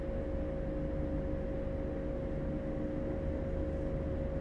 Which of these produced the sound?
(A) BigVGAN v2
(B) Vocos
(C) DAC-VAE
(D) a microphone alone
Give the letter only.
D